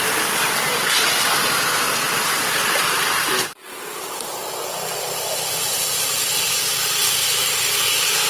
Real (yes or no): yes